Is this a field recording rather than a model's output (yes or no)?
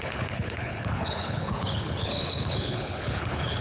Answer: no